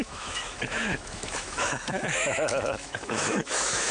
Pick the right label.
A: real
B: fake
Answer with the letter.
B